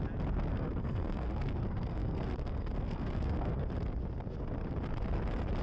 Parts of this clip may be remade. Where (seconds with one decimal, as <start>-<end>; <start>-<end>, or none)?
0.5-3.7